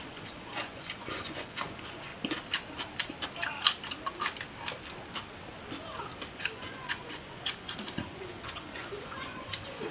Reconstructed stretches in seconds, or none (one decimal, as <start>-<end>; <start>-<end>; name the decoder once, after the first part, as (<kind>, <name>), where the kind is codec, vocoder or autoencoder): 0.0-2.1 (vocoder, Vocos); 6.3-9.9